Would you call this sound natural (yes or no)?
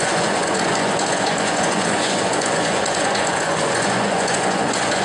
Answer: no